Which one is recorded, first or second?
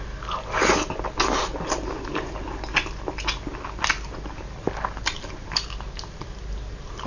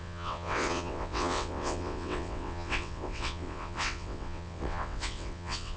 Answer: first